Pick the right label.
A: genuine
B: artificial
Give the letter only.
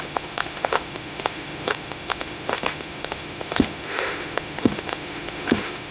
B